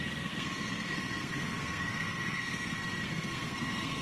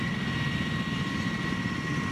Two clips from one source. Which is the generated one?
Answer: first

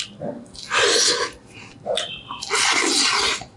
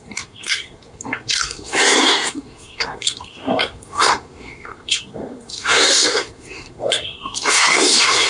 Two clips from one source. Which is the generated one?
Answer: second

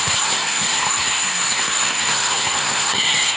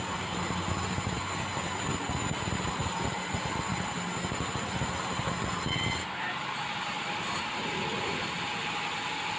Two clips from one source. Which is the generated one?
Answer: first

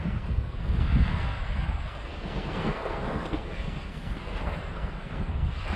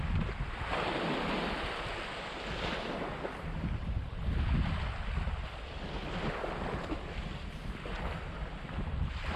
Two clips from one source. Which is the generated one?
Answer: first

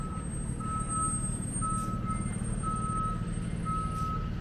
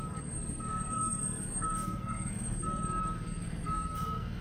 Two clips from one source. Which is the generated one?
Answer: second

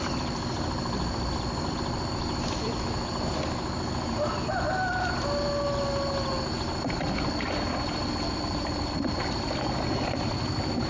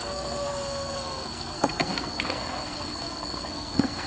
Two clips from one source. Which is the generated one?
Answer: second